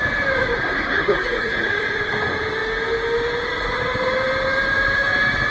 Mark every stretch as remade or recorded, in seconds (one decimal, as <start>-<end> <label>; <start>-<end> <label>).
0.0-1.0 recorded; 1.0-1.7 remade; 1.7-5.5 recorded